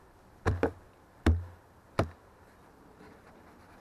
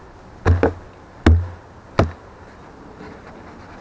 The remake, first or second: first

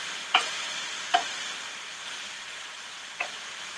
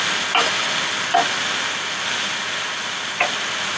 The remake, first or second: first